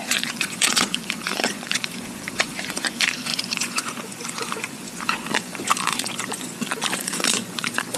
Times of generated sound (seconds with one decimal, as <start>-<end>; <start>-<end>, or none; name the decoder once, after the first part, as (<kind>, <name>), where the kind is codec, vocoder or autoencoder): 0.0-8.0 (vocoder, Vocos)